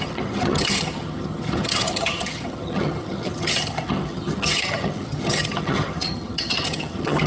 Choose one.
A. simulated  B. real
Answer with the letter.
A